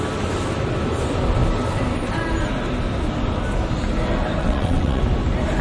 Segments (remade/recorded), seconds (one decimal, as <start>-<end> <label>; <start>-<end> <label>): 0.0-4.4 recorded; 4.4-5.0 remade; 5.0-5.6 recorded